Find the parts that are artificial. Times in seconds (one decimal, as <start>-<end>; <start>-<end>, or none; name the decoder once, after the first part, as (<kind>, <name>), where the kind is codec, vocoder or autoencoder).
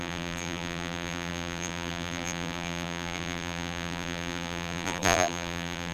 0.0-5.9 (vocoder, BigVGAN v2)